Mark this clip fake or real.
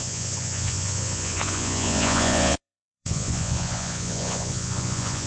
fake